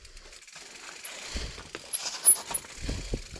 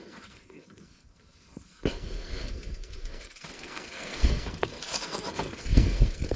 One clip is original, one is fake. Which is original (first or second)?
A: first